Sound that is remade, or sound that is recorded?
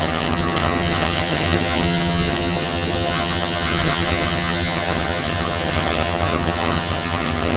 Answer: remade